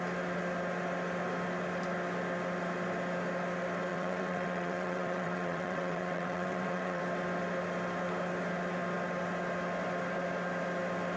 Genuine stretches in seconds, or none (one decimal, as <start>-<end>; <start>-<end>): 0.0-3.9; 7.0-11.2